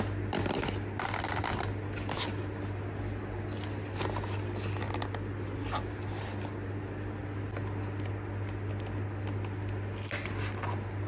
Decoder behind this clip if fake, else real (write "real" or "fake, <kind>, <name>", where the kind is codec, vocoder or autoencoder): real